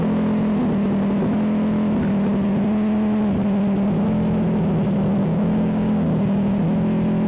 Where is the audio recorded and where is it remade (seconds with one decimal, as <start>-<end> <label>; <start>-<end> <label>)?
0.0-5.2 recorded; 5.2-6.6 remade; 6.6-7.3 recorded